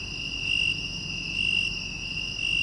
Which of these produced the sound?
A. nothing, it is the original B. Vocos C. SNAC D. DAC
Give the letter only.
A